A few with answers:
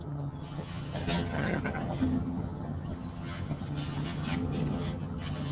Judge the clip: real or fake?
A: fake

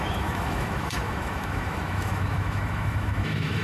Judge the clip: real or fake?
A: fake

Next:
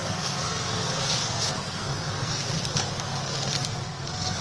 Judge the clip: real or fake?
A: fake